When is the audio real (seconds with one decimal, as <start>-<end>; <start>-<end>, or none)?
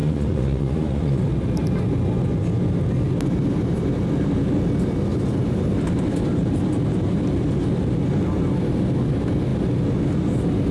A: 1.2-10.7